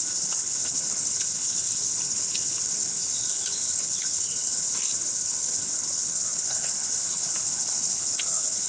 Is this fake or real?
fake